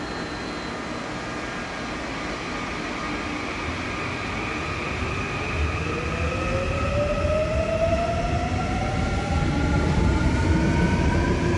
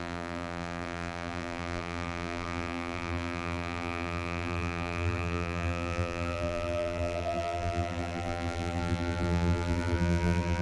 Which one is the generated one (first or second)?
second